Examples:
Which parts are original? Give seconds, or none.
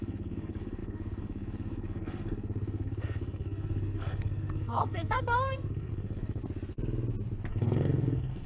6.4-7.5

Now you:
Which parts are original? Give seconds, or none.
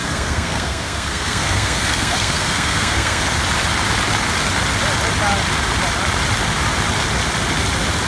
3.2-8.1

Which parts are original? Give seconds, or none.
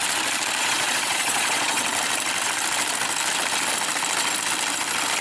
0.0-0.6; 1.8-5.2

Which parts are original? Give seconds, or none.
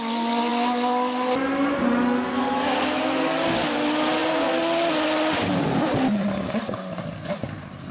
0.0-7.9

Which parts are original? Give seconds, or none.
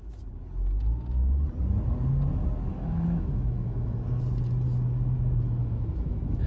0.0-2.7; 4.2-5.6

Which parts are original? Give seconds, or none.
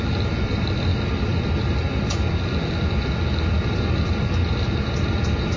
0.0-5.6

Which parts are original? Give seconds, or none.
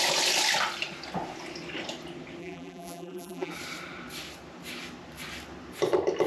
0.0-2.4; 3.5-6.3